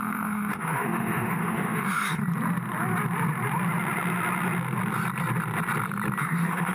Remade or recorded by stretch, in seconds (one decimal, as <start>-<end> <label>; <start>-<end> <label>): 0.0-2.2 remade; 2.2-6.2 recorded; 6.2-6.7 remade